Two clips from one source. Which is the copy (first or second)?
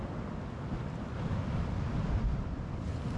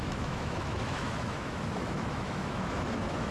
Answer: second